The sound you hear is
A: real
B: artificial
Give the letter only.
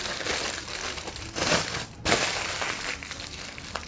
B